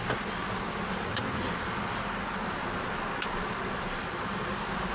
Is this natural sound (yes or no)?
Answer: yes